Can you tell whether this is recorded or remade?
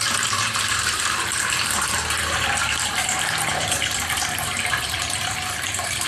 remade